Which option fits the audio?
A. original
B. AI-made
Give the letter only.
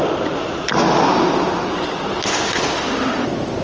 A